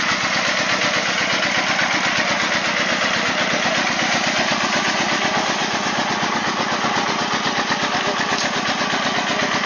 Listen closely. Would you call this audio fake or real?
real